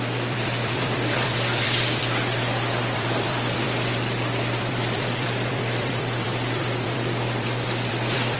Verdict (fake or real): fake